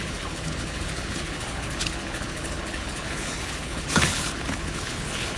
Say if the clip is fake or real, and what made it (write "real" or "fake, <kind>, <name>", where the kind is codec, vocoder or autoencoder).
fake, codec, HILCodec